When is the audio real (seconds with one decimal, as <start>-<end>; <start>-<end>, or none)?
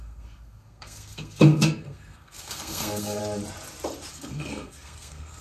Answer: 3.2-4.1